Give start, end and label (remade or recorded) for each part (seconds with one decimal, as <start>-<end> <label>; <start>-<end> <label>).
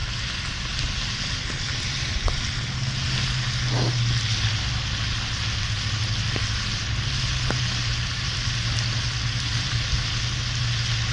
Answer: 0.0-11.1 recorded